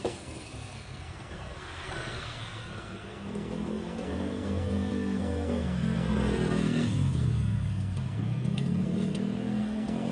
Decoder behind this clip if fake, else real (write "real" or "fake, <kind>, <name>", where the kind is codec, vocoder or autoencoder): fake, codec, SNAC